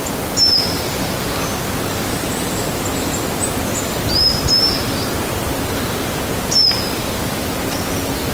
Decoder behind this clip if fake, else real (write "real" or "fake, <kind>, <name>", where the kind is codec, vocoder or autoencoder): real